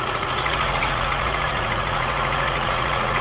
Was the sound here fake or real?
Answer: fake